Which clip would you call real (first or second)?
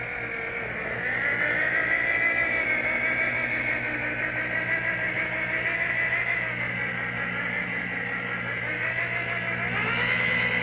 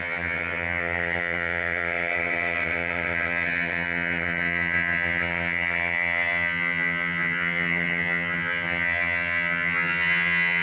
first